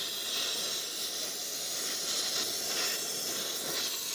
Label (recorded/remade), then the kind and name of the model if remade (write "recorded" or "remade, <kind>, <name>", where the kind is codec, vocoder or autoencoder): recorded